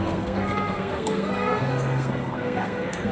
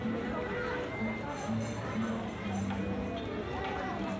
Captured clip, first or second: second